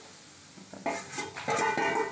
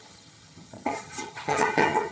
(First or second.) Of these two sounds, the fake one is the second